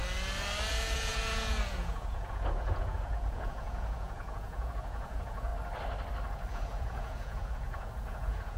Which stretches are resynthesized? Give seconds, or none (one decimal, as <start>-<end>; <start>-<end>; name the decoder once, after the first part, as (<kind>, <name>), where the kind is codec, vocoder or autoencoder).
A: 0.7-5.5 (vocoder, Vocos); 6.5-8.6